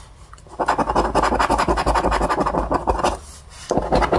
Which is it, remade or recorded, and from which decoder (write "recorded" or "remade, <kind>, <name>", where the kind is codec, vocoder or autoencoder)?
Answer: recorded